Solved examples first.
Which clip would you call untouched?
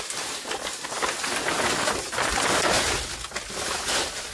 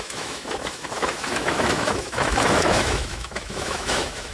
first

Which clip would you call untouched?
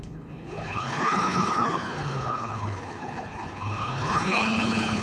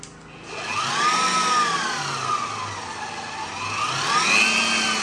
second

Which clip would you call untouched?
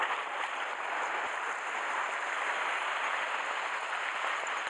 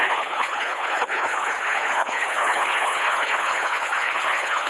first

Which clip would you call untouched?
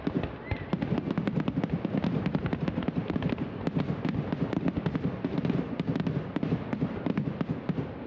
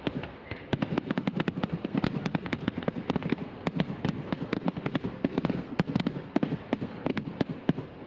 first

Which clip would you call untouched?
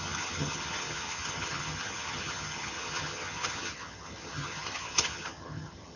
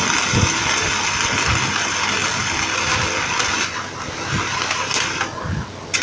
second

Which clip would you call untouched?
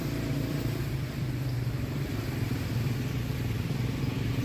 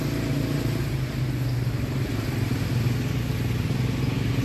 second